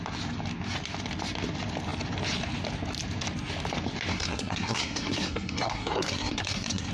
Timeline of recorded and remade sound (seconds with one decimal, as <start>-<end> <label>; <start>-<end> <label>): 0.0-4.1 recorded; 4.1-6.9 remade